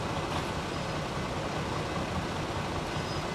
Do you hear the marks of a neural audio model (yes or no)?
no